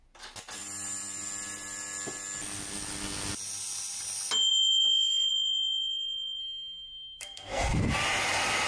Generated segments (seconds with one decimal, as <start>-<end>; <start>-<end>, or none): 6.4-7.9